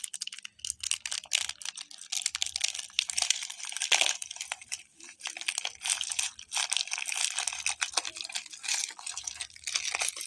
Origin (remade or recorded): recorded